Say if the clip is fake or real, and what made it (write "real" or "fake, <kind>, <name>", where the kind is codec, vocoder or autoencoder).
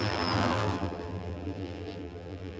fake, vocoder, BigVGAN v2